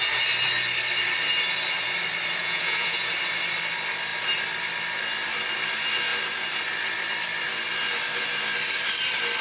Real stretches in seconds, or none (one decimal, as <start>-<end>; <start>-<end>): 0.0-2.4; 3.1-9.4